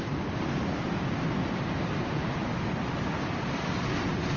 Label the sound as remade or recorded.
recorded